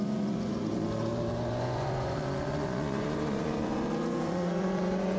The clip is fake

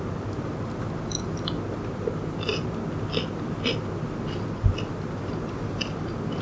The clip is real